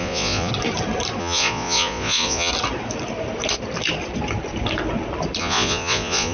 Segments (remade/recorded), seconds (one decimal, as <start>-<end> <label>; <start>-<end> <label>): 0.0-0.5 remade; 0.5-1.2 recorded; 1.2-2.5 remade; 2.5-5.4 recorded; 5.4-6.3 remade